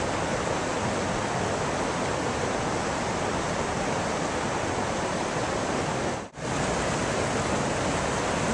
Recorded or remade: recorded